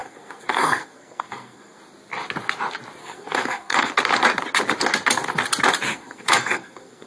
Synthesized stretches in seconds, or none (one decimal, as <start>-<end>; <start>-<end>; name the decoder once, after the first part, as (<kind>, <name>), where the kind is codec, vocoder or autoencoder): 0.0-1.8 (codec, SNAC); 3.0-3.9; 5.9-7.1